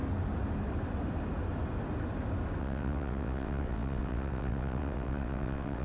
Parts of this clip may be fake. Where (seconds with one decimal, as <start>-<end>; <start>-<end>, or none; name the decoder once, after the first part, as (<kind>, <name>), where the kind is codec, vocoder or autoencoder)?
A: 2.6-5.8 (vocoder, WaveNeXt)